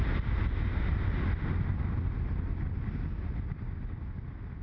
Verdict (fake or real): real